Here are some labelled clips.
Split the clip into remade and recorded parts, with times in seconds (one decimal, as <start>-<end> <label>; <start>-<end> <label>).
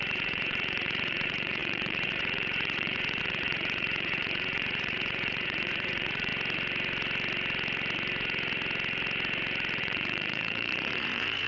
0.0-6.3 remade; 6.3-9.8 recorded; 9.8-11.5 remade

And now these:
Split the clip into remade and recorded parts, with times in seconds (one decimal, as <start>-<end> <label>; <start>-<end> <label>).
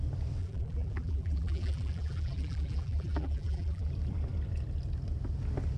0.0-0.4 recorded; 0.4-3.9 remade; 3.9-5.8 recorded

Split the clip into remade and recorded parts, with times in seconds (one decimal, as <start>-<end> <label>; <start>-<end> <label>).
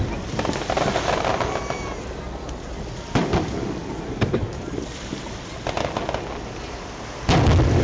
0.0-7.8 recorded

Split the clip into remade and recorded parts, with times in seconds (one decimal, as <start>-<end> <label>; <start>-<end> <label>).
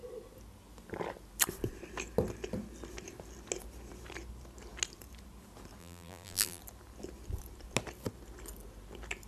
0.0-5.8 recorded; 5.8-6.6 remade; 6.6-9.3 recorded